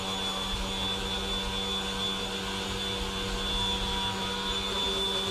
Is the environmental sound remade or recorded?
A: recorded